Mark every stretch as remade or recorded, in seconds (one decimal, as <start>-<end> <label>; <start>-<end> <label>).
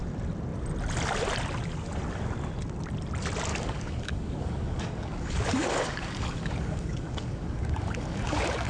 0.0-3.5 recorded; 3.5-8.7 remade